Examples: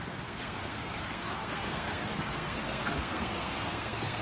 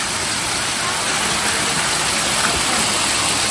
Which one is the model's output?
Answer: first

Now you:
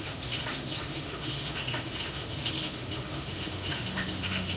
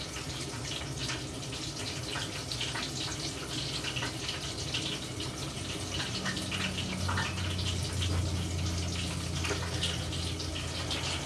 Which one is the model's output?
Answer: first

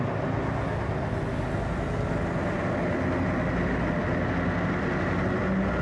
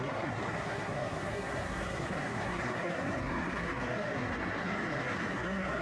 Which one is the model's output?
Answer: second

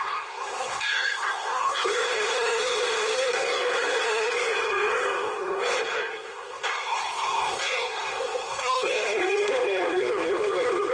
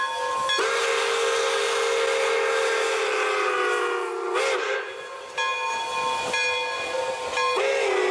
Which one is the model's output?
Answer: first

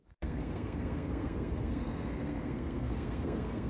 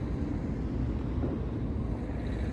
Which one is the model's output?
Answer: first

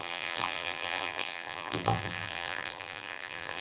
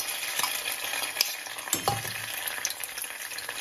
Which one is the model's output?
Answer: first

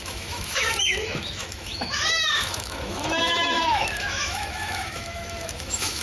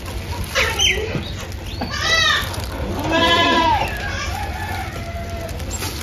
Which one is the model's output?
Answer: first